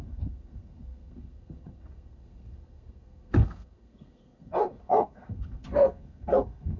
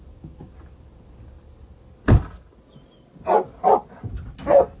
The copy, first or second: first